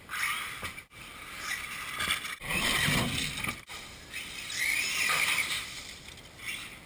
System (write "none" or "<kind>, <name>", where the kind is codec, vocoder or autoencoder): vocoder, BigVGAN v2